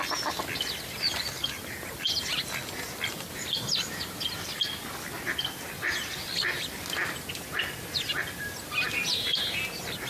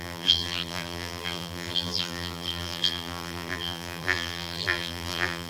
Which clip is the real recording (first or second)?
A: first